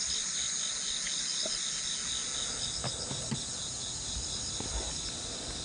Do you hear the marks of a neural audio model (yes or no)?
no